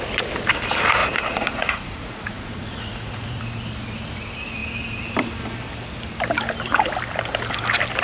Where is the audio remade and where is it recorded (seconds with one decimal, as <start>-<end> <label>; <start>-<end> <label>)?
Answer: 0.0-1.0 recorded; 1.0-3.4 remade; 3.4-8.0 recorded